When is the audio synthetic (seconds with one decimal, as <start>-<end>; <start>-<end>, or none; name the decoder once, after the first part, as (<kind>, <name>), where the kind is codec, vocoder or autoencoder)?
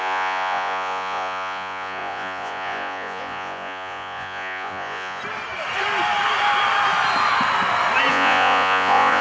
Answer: 0.0-5.2 (vocoder, Vocos); 8.1-9.2